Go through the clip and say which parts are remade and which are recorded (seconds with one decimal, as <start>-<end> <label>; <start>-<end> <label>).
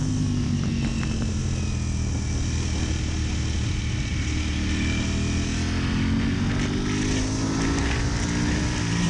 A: 0.0-9.1 recorded